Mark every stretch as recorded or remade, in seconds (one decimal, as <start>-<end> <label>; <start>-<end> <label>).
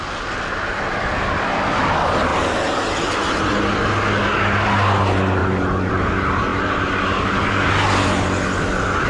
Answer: 0.0-2.3 recorded; 2.3-3.1 remade; 3.1-5.4 recorded; 5.4-5.9 remade; 5.9-9.1 recorded